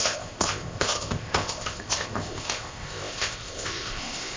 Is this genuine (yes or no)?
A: no